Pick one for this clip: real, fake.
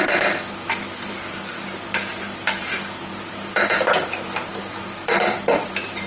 fake